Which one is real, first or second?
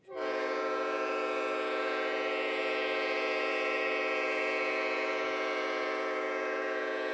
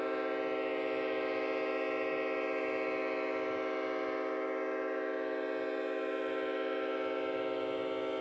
second